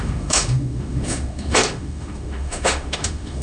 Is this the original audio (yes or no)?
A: no